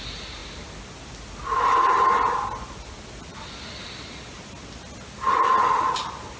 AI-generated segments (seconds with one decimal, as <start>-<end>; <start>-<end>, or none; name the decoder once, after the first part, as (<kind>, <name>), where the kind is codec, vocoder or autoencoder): none